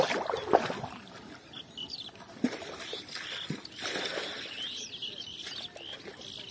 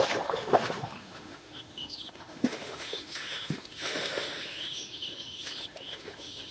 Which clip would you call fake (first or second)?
second